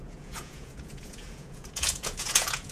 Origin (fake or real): fake